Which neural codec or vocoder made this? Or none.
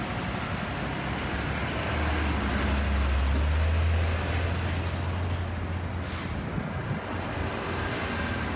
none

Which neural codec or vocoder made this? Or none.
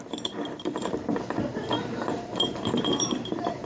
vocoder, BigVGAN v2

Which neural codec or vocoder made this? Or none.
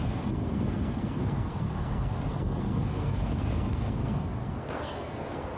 codec, SNAC